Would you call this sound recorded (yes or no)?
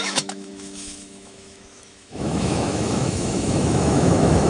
no